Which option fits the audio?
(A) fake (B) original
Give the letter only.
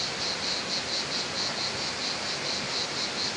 B